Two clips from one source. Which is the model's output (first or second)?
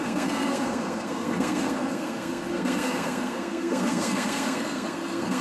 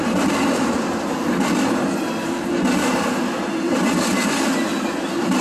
first